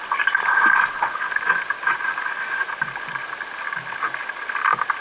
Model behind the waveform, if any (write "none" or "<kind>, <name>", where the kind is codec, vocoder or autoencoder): none